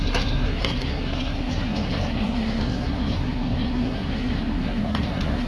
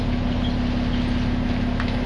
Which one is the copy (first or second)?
first